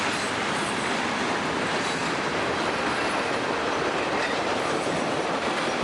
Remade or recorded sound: recorded